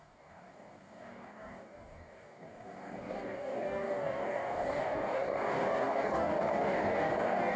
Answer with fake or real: fake